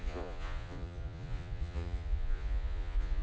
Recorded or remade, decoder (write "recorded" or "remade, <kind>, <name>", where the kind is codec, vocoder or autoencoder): remade, vocoder, Vocos